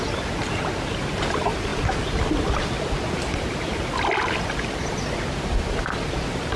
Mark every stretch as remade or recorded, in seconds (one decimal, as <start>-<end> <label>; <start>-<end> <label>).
0.0-6.6 recorded